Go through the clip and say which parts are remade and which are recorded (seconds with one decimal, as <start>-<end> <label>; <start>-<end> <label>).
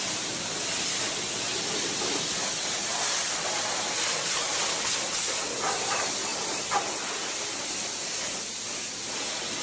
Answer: 0.0-9.6 recorded